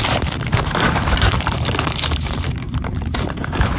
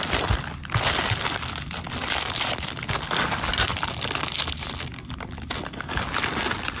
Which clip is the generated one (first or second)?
first